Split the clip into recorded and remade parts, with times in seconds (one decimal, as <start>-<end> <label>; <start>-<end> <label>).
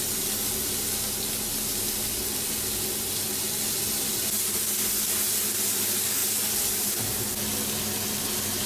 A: 0.0-8.7 recorded